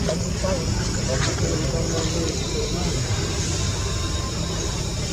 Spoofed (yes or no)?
no